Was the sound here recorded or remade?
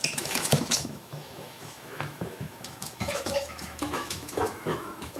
remade